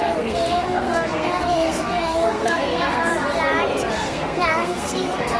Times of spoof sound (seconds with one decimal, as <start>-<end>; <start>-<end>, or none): 0.0-3.1; 3.9-5.4

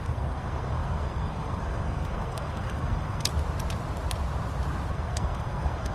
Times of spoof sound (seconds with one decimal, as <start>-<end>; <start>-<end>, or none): 0.0-3.3; 4.9-5.9

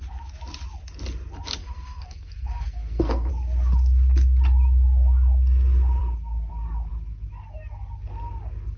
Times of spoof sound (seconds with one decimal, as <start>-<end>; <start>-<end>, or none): 1.6-3.3

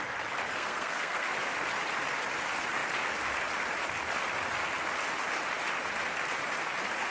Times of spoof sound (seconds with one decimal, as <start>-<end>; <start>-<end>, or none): 0.5-1.3

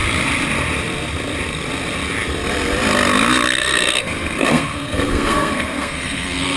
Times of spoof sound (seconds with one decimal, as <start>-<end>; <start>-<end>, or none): 3.6-6.6